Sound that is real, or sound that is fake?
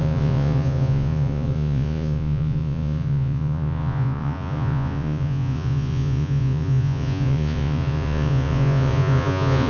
fake